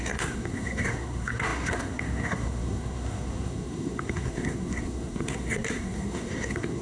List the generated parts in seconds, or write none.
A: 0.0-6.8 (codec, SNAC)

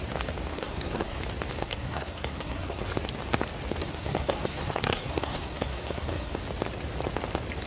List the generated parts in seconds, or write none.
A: 0.5-1.2 (codec, SNAC); 1.6-2.8; 3.8-6.4

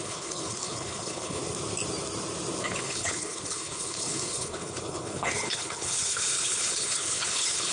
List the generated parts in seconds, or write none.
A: 0.0-1.4 (codec, HILCodec); 2.6-7.7

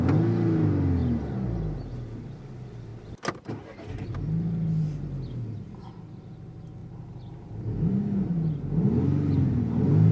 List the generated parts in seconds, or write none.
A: none

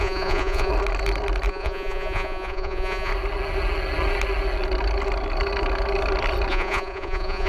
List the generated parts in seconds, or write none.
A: 0.0-0.7 (vocoder, Vocos); 1.5-3.1; 6.5-7.5

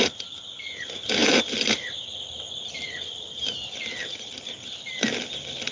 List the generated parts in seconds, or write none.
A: 1.2-4.0 (vocoder, BigVGAN v2)

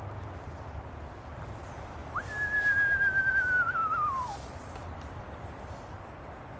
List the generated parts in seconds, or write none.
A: 0.0-2.0 (vocoder, BigVGAN v2); 3.3-6.6